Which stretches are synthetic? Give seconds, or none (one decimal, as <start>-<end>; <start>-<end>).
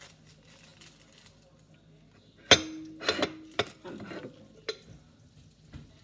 none